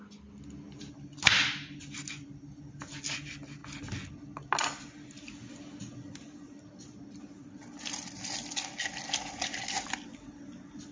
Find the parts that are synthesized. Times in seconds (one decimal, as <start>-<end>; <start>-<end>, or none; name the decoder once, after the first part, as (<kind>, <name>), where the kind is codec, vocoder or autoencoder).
none